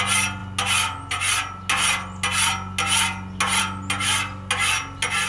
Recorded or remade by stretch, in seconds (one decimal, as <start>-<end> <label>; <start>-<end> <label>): 0.0-5.3 recorded